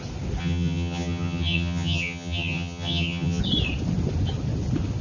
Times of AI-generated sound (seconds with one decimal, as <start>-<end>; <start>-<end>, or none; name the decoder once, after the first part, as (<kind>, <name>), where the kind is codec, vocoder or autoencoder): 0.4-3.4 (vocoder, HiFi-GAN)